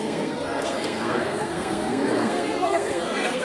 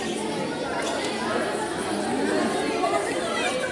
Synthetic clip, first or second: first